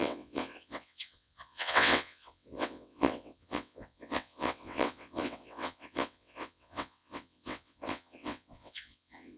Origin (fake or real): fake